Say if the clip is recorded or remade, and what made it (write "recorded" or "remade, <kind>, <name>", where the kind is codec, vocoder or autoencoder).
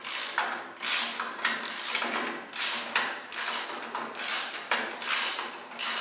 recorded